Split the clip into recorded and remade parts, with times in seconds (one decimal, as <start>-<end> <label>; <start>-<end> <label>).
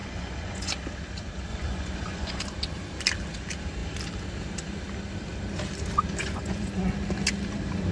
0.0-0.7 remade; 0.7-1.5 recorded; 1.5-2.4 remade; 2.4-6.2 recorded; 6.2-6.9 remade; 6.9-7.9 recorded